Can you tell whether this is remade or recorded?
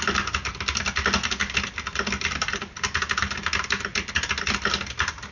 recorded